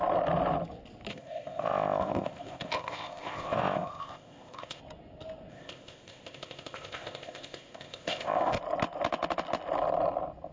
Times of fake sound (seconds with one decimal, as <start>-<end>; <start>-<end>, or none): 1.1-4.8; 5.5-8.6

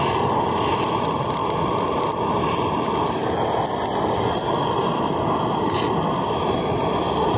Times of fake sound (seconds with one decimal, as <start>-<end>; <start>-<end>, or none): none

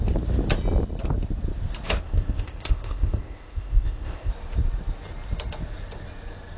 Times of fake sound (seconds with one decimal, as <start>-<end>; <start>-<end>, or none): 2.0-4.3

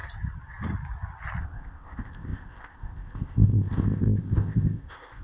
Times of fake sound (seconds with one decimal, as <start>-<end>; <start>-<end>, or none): 1.4-5.2

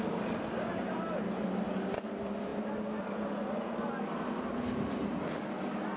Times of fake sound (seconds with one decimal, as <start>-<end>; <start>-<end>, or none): none